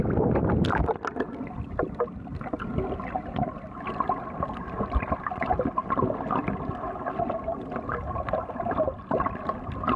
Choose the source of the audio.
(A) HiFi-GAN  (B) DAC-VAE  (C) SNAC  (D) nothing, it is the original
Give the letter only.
D